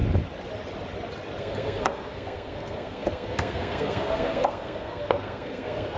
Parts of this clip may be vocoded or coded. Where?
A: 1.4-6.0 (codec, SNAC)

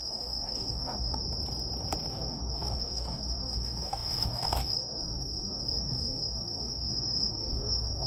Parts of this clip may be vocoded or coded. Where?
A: 0.0-1.2 (codec, DAC); 2.1-8.1

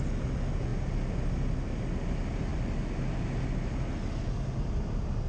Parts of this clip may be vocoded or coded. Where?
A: none

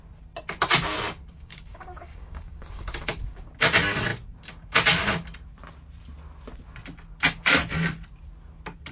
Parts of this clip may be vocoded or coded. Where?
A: 1.3-3.5 (codec, DAC)

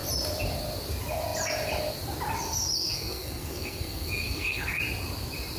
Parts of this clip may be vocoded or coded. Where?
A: 2.8-4.8 (codec, SNAC)

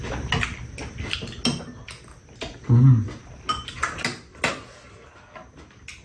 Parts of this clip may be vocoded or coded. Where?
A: none